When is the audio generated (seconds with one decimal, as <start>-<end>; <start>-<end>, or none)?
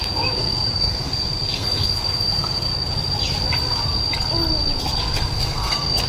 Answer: 0.0-2.7; 4.8-6.1